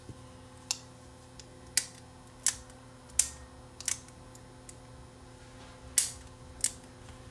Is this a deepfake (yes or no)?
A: no